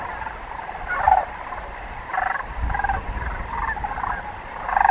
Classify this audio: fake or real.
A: real